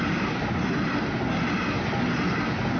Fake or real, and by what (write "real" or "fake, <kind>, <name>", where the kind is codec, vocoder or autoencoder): real